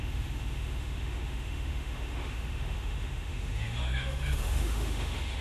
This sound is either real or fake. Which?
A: fake